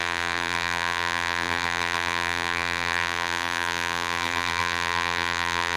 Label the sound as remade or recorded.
remade